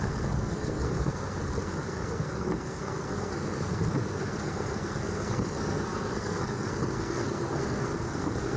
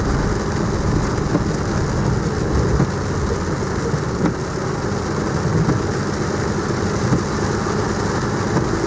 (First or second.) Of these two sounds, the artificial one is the first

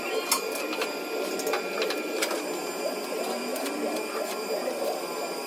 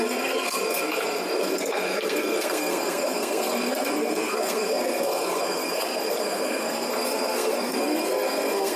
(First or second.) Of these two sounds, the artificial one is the second